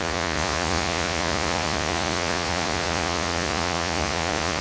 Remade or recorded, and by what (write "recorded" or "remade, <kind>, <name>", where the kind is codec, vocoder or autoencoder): remade, vocoder, Vocos